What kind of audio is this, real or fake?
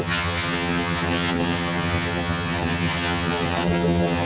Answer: fake